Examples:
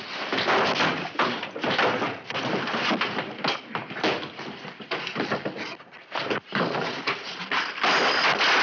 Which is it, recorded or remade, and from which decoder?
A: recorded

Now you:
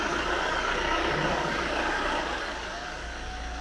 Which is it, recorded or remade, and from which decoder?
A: remade, codec, DAC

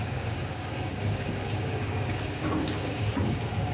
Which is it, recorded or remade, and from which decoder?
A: remade, codec, DAC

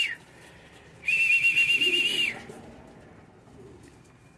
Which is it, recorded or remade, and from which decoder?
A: recorded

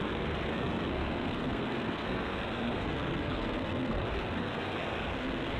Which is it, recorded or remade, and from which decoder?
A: remade, codec, SNAC